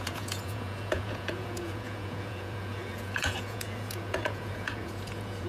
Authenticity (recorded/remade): remade